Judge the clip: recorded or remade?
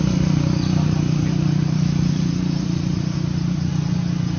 recorded